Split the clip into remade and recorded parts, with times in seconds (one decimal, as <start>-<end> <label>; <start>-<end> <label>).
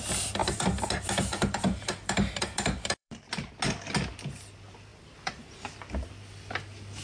0.0-0.4 recorded; 0.4-3.5 remade; 3.5-4.9 recorded; 4.9-5.7 remade; 5.7-7.0 recorded